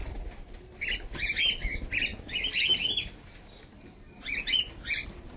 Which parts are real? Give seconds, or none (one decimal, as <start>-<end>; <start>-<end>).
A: 0.0-5.4